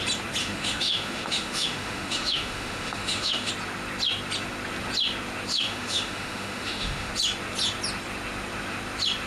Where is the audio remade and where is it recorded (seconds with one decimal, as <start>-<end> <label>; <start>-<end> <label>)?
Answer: 0.0-0.4 recorded; 0.4-3.5 remade; 3.5-5.5 recorded; 5.5-7.1 remade; 7.1-9.3 recorded